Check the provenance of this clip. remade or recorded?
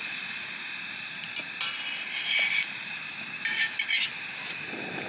recorded